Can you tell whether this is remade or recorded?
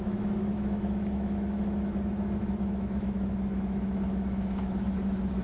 remade